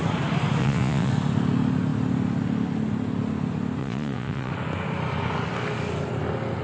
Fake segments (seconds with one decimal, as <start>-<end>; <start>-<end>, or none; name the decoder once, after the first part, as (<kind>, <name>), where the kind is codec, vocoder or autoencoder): 0.6-1.1 (vocoder, Vocos); 3.8-4.5